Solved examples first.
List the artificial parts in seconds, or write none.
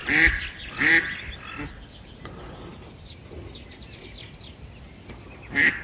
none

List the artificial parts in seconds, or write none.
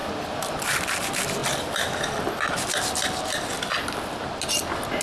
0.0-0.8 (vocoder, BigVGAN v2); 1.4-4.4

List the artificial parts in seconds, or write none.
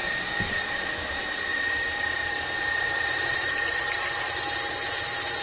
1.5-4.7 (vocoder, BigVGAN v2)